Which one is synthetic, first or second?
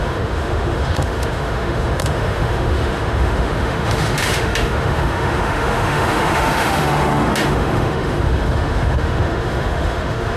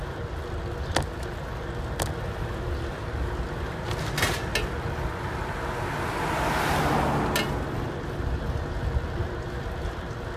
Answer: first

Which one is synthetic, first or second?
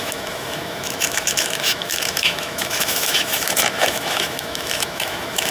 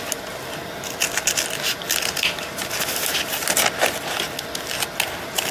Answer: first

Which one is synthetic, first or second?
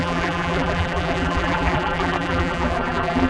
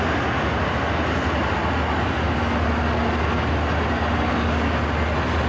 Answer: first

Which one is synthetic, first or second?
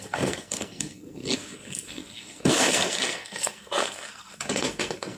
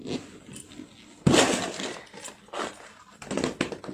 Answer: first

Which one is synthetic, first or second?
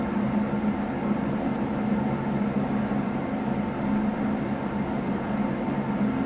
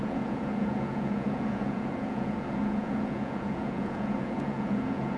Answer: second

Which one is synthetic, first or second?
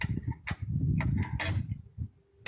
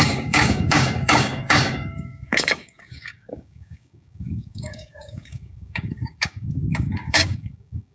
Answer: second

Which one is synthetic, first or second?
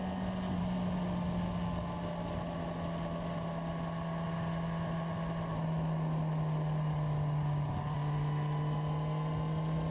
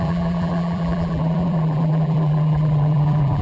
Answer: second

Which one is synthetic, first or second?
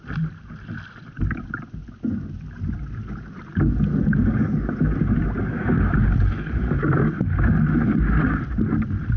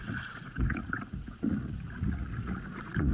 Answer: second